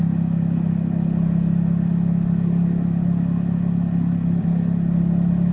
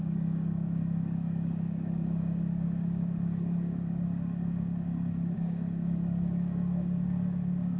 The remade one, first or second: second